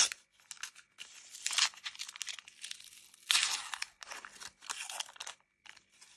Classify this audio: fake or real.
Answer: real